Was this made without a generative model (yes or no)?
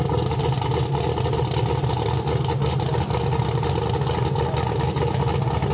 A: yes